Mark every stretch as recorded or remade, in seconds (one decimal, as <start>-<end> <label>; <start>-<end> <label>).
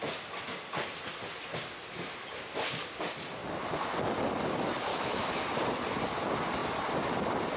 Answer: 0.0-4.9 recorded; 4.9-5.4 remade; 5.4-7.6 recorded